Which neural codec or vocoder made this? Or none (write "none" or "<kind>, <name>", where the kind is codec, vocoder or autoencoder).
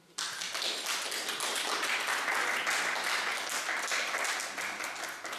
none